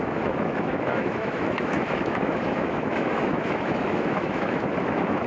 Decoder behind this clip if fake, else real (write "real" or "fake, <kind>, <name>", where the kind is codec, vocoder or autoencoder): fake, autoencoder, DAC-VAE